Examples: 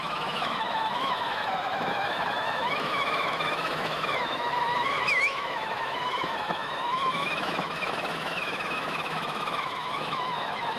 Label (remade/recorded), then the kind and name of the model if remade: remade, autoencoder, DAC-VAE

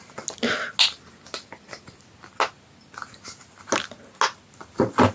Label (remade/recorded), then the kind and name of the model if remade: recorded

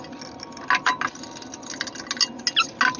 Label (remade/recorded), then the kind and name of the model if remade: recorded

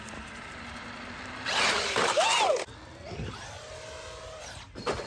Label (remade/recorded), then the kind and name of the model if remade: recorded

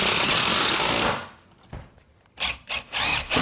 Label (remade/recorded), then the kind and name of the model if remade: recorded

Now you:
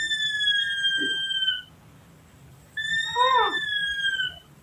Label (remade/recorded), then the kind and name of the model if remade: recorded